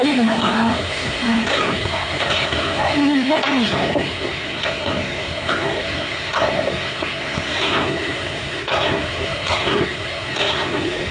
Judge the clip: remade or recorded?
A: remade